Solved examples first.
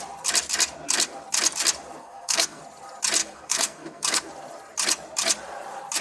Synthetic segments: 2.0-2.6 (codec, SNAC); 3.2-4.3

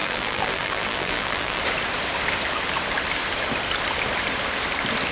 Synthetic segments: 0.0-1.6 (vocoder, BigVGAN v2)

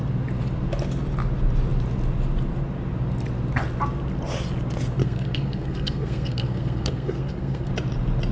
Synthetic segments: 5.0-7.7 (codec, SNAC)

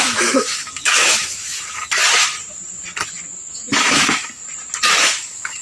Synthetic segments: 0.0-2.0 (autoencoder, DAC-VAE); 3.4-4.4; 5.0-5.6

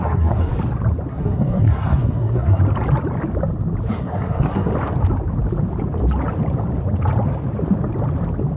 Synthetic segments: 0.0-0.5 (codec, SNAC); 1.1-2.6; 3.9-4.7

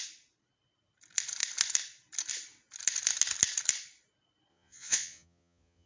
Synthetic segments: 4.5-5.9 (vocoder, Vocos)